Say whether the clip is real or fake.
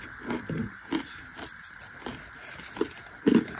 real